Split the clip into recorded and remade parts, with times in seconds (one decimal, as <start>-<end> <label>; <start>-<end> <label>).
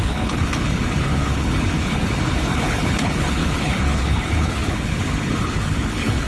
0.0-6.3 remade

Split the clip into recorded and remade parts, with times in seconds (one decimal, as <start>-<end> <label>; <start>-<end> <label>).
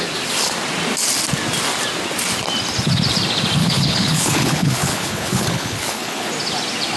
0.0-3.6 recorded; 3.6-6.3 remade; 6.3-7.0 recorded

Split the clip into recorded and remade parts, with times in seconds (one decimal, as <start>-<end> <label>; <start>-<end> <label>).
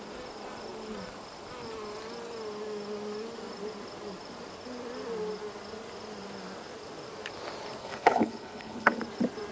0.0-7.8 recorded; 7.8-9.0 remade; 9.0-9.5 recorded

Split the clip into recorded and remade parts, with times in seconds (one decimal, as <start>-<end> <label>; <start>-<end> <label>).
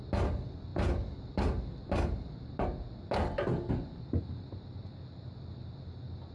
0.0-6.3 recorded